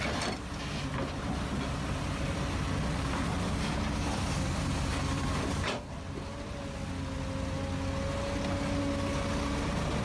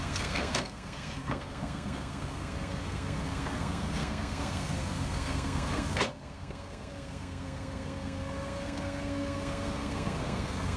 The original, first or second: first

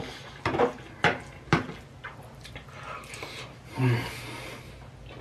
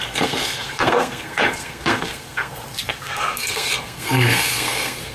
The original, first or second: first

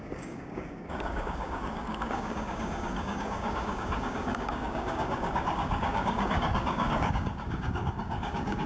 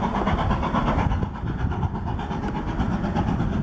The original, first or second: second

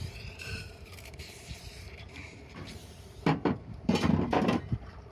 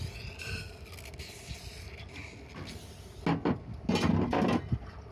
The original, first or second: second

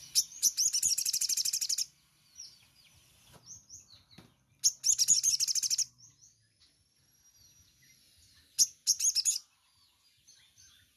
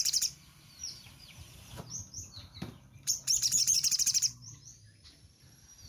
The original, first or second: first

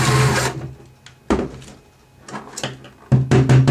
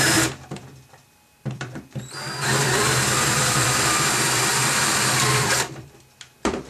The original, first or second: first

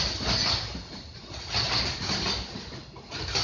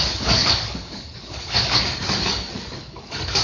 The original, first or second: first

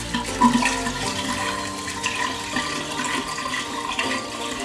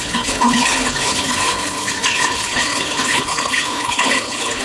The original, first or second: first